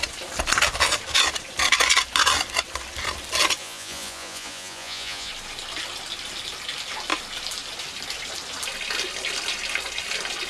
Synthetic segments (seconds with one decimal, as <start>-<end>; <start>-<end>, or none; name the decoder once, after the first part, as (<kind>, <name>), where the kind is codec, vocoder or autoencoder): 3.6-5.3 (vocoder, Vocos)